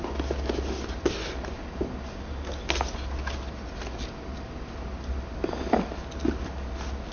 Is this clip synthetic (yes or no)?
no